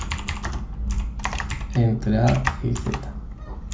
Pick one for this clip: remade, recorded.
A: recorded